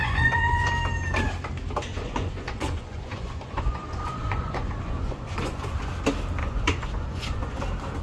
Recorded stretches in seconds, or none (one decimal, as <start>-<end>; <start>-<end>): 0.7-1.9; 5.9-6.4; 7.6-8.0